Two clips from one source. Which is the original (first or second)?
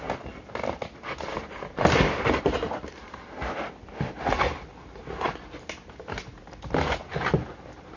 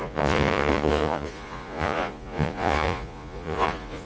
first